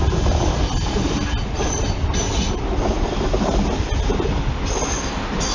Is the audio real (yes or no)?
yes